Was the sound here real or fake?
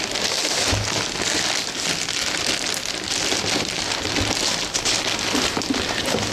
real